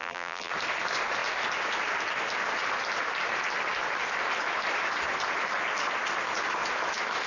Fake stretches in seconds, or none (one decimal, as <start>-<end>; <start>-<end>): 0.0-0.5